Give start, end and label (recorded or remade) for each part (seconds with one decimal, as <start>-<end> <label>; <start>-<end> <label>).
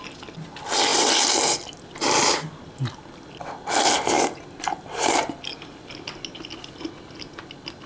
0.0-7.9 recorded